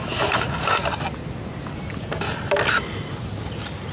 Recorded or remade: recorded